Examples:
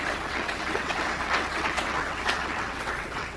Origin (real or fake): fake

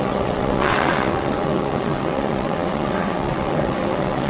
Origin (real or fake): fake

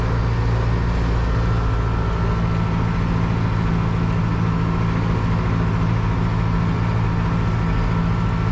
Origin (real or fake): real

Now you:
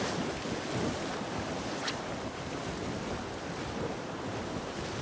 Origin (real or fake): real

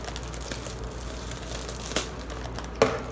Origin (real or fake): real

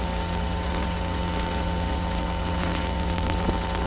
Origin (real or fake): fake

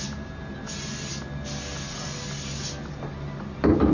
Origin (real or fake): real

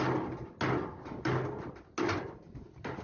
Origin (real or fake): real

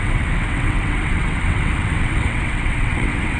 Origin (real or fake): fake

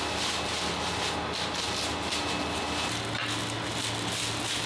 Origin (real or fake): real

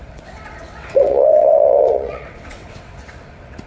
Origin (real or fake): fake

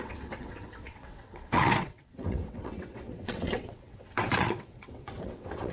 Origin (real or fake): fake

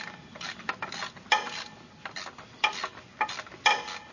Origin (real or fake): real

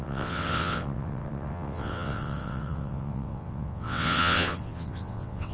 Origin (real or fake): fake